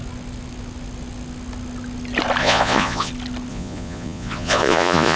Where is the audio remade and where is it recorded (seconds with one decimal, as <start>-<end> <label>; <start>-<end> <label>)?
0.0-2.4 recorded; 2.4-3.1 remade; 3.1-3.5 recorded; 3.5-5.2 remade